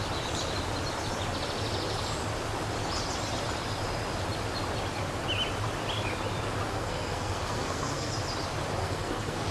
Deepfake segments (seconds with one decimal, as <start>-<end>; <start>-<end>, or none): 6.7-8.1; 8.8-9.5

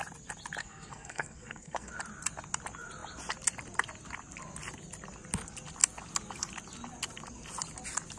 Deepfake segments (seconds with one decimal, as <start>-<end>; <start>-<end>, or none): 0.6-1.9

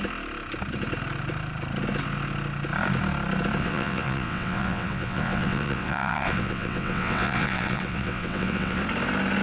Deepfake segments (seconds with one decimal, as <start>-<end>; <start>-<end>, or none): 3.6-8.8

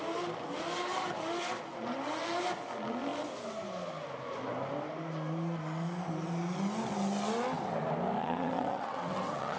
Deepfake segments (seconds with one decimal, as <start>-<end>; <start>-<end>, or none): 8.2-9.6

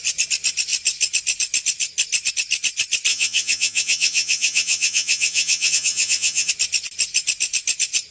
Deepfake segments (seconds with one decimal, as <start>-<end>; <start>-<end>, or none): 3.1-6.5

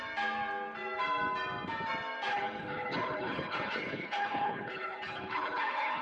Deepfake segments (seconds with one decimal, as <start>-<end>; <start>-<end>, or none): 2.3-6.0